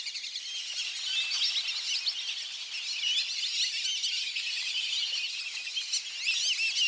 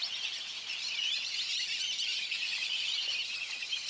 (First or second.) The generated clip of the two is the second